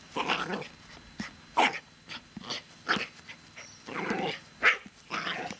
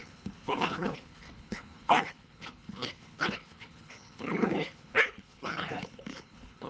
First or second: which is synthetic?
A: second